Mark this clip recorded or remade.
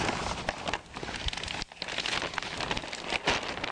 recorded